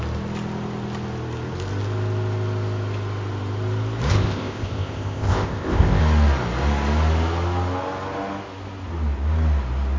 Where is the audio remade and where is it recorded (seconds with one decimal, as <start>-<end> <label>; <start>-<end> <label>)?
0.0-4.1 recorded; 4.1-6.0 remade; 6.0-10.0 recorded